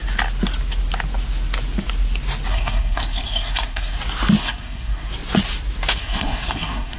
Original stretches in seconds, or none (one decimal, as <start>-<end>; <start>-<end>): 0.0-2.5; 4.0-4.4; 5.1-6.0